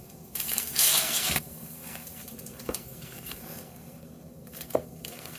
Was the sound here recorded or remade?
remade